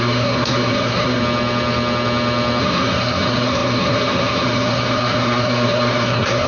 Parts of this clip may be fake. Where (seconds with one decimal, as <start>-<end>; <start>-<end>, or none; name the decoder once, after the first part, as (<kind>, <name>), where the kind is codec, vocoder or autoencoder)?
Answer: 0.0-1.2 (codec, SNAC); 2.6-6.5